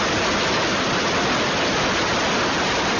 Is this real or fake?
real